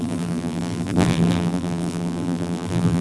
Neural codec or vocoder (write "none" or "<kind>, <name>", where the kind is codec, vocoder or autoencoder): vocoder, BigVGAN v2